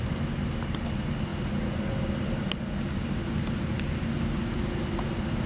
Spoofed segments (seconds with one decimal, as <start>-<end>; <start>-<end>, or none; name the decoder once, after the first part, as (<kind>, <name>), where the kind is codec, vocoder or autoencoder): none